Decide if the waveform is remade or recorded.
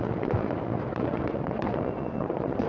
remade